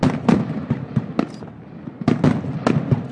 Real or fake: real